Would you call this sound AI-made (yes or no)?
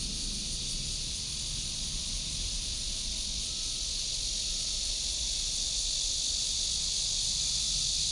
no